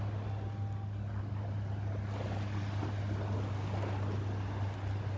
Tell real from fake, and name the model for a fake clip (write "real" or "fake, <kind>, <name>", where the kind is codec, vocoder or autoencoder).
real